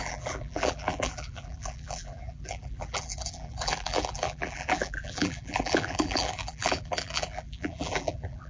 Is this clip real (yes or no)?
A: no